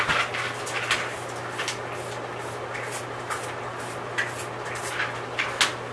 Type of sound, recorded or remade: recorded